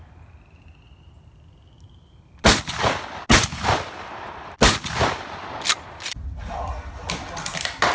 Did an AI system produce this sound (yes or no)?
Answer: no